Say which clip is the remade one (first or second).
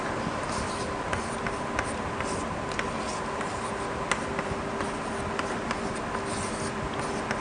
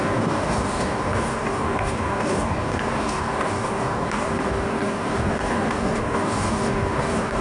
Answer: second